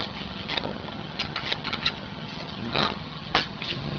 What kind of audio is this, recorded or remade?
remade